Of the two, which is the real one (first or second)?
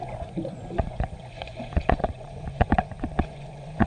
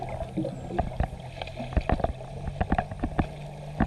second